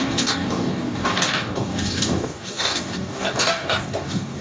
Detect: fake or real fake